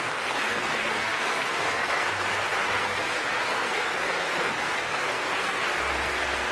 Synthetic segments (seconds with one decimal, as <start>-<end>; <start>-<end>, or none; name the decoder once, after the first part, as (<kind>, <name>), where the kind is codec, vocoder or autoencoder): 0.0-6.5 (codec, SNAC)